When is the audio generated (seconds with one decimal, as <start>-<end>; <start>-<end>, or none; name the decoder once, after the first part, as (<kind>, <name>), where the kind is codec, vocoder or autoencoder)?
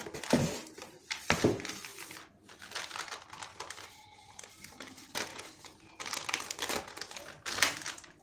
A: 5.3-5.9 (vocoder, Vocos)